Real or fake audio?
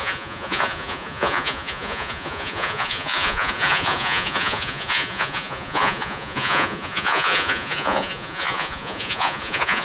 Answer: fake